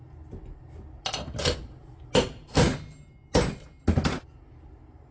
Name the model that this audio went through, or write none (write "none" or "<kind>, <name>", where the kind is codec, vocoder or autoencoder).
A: none